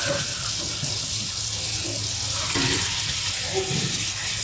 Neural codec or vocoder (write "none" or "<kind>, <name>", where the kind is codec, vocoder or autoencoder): none